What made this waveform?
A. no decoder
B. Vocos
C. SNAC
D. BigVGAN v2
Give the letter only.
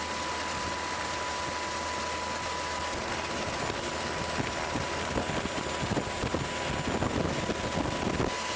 A